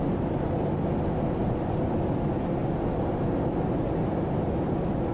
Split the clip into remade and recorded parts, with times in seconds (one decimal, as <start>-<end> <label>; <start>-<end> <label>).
0.0-5.1 recorded